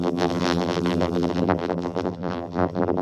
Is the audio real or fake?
fake